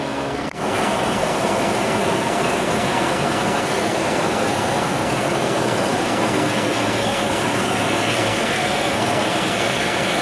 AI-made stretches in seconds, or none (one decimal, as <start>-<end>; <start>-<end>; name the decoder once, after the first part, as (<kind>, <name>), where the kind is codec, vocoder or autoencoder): 0.0-10.2 (codec, SNAC)